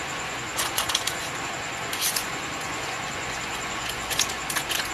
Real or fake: fake